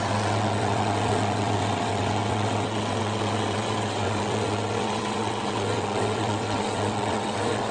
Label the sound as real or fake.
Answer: fake